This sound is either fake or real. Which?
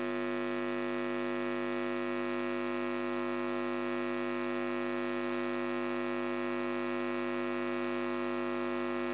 real